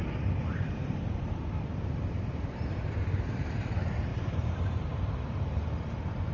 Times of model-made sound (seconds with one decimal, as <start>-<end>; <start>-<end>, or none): 0.0-6.3